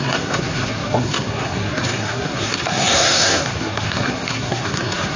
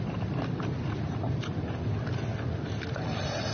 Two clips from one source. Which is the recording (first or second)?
second